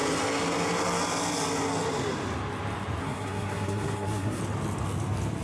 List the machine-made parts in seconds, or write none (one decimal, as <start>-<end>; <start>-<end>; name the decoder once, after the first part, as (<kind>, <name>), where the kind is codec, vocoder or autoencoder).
3.0-4.4 (codec, SNAC)